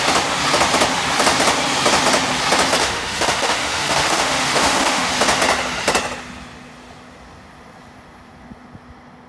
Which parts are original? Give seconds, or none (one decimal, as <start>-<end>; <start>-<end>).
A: 0.0-2.8; 5.1-9.3